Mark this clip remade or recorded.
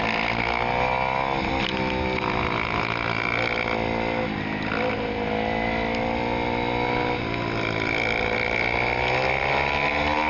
recorded